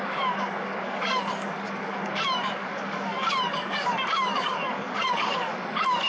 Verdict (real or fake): fake